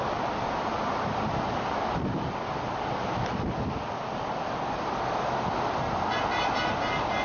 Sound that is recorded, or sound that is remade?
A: recorded